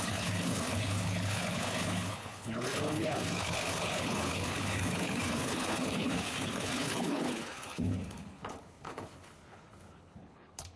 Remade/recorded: remade